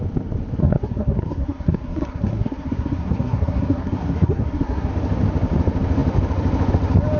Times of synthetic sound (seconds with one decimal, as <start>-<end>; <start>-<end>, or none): 0.6-4.9